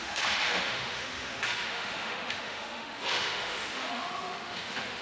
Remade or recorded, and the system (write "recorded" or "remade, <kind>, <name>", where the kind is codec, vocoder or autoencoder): remade, autoencoder, DAC-VAE